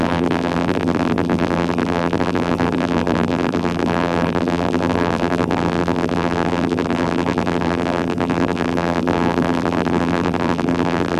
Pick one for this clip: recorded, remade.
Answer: remade